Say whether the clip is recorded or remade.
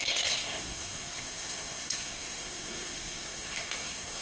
remade